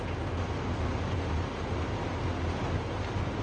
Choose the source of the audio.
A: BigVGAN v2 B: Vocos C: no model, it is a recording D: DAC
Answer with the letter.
C